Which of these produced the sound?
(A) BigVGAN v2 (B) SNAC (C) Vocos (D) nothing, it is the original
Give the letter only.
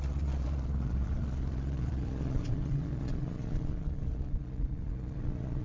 C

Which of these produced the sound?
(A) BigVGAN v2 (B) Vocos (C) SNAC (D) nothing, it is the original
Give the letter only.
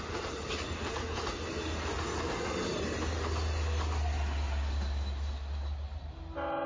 D